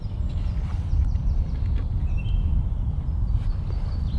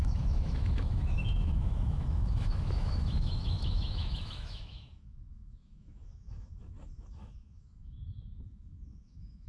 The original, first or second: first